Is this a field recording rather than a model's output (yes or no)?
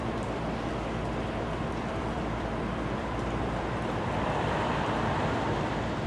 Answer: no